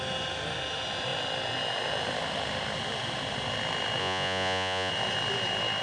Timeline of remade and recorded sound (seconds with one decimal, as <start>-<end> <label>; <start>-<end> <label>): 0.0-4.0 recorded; 4.0-4.9 remade; 4.9-5.8 recorded